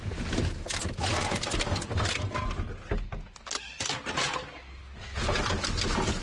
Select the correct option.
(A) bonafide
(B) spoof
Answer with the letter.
A